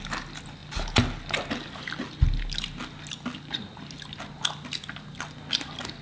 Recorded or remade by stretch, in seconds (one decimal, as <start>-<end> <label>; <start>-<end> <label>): 0.0-6.0 recorded